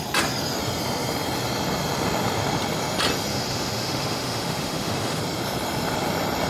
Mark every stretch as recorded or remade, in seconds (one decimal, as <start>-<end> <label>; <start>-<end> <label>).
0.0-3.3 recorded; 3.3-5.2 remade; 5.2-6.5 recorded